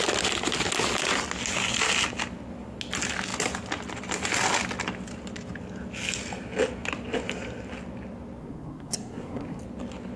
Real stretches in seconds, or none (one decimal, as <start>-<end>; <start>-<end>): 0.0-8.4; 9.6-10.2